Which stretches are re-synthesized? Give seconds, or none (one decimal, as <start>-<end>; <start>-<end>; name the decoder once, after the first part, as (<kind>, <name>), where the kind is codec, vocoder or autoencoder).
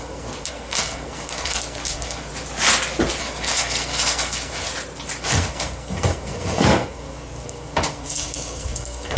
0.0-2.3 (codec, SNAC); 3.2-4.7; 5.2-9.2